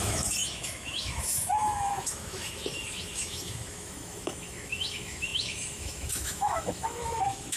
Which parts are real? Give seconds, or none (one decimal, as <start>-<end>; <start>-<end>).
none